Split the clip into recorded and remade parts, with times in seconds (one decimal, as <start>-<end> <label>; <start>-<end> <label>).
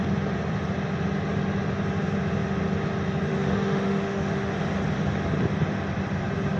0.0-3.3 recorded; 3.3-4.5 remade; 4.5-6.6 recorded